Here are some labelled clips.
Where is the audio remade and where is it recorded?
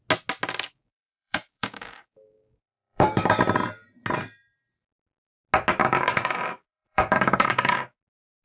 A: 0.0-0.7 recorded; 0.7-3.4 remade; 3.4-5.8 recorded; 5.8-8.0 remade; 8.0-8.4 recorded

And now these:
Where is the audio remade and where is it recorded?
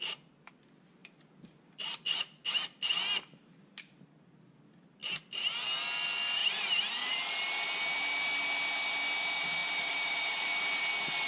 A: 0.0-1.0 recorded; 1.0-2.1 remade; 2.1-6.4 recorded; 6.4-7.3 remade; 7.3-9.6 recorded; 9.6-10.9 remade; 10.9-11.3 recorded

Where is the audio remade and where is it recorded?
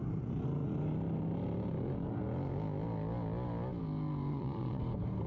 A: 0.0-4.3 recorded; 4.3-4.8 remade; 4.8-5.3 recorded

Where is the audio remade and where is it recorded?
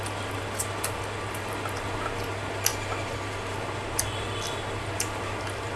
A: 0.0-5.8 recorded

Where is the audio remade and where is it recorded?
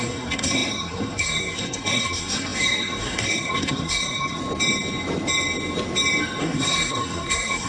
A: 0.0-4.4 remade; 4.4-6.4 recorded; 6.4-7.7 remade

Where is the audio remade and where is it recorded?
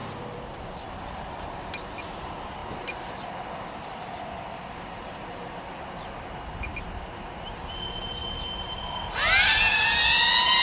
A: 0.0-10.6 recorded